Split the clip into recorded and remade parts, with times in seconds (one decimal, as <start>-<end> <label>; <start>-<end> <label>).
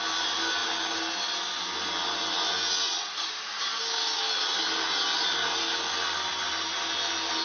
0.0-7.4 recorded